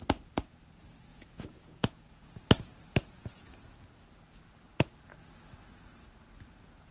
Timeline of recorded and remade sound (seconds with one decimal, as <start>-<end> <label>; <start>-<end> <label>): 0.0-1.1 recorded; 1.1-3.6 remade; 3.6-6.9 recorded